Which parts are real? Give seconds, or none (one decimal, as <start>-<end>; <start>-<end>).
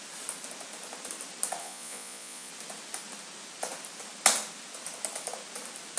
0.0-1.6; 2.5-6.0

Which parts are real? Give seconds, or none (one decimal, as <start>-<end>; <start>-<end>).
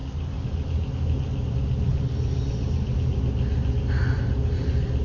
0.0-5.0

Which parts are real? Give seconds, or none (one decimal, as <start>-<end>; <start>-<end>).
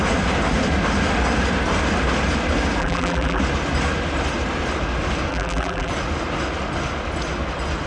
0.0-2.8; 3.4-5.3; 5.9-7.9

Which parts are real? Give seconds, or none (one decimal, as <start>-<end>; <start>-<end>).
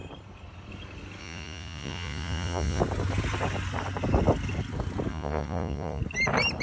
0.0-1.2; 2.8-5.1; 6.0-6.6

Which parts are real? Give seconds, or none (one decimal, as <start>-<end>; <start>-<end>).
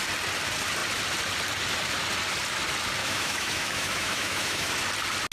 0.0-3.0; 4.7-5.3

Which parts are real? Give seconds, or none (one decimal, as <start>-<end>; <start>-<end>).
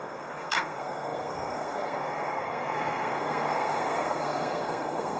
none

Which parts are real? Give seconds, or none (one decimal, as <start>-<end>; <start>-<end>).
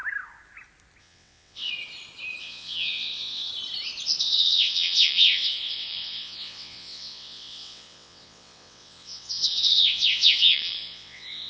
0.0-1.0; 1.7-2.4; 3.5-4.2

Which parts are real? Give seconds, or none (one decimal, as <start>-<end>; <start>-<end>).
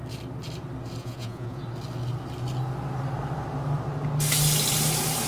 0.0-1.0; 1.6-5.3